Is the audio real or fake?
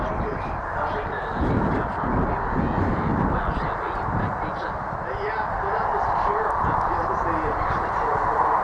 real